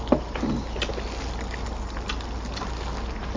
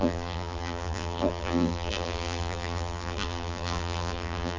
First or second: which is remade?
second